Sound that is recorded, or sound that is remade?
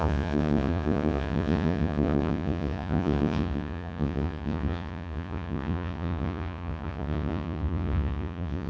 remade